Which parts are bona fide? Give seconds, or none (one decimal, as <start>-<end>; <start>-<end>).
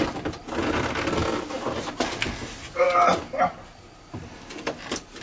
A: 0.0-5.2